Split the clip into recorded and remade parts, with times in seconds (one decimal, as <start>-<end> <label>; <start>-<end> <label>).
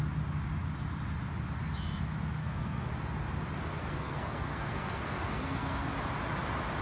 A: 0.0-2.4 recorded; 2.4-2.9 remade; 2.9-3.8 recorded; 3.8-5.9 remade; 5.9-6.8 recorded